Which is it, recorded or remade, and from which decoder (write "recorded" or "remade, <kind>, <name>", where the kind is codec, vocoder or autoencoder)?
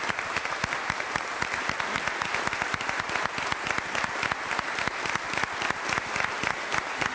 recorded